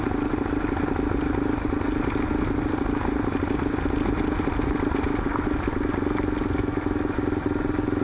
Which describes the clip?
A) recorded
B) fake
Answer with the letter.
A